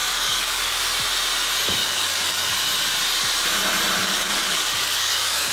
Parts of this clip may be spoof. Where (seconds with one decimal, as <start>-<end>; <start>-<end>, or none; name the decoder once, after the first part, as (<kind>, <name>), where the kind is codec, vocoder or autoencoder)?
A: 0.0-0.8 (codec, DAC); 1.8-2.5; 4.0-5.5